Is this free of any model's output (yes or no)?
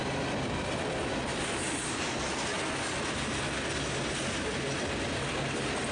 yes